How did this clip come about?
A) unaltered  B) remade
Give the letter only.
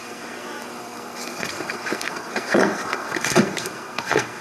B